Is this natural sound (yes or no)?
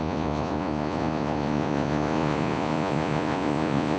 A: no